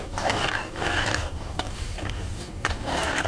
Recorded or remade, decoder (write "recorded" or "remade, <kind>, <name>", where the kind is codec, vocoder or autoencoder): remade, codec, DAC